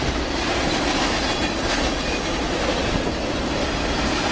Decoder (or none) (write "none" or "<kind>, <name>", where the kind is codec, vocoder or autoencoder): none